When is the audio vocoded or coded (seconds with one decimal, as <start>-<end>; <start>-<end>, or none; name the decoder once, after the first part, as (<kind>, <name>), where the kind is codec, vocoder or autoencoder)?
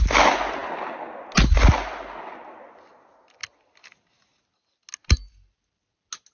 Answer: none